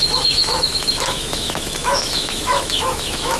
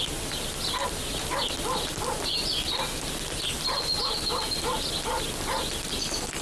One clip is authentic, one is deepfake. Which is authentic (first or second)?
second